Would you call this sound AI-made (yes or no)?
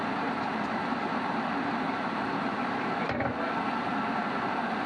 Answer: yes